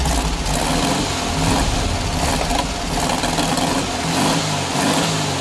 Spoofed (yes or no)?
no